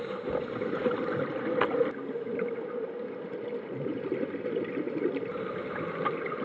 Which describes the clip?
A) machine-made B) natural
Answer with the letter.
B